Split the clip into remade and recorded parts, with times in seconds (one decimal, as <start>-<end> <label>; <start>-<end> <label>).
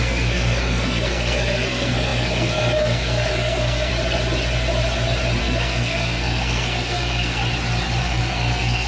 0.0-3.9 remade; 3.9-5.4 recorded; 5.4-7.4 remade; 7.4-8.0 recorded; 8.0-8.9 remade